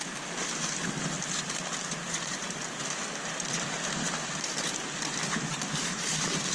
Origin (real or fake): real